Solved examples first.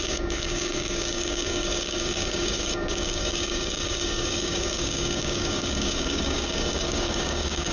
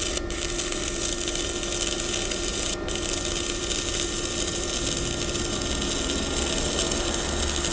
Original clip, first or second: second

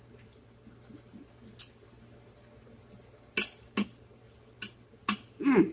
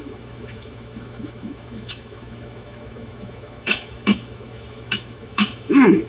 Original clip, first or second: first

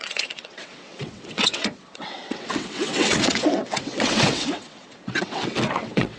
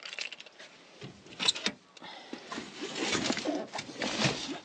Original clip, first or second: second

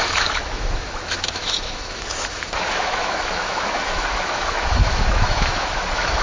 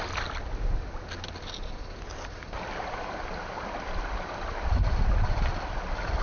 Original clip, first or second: second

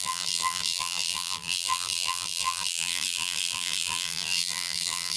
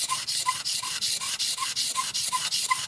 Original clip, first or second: second